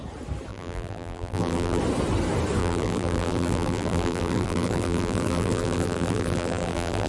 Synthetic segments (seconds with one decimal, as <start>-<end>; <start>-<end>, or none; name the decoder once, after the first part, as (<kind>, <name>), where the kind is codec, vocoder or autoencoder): 0.5-1.8 (vocoder, BigVGAN v2); 2.6-7.1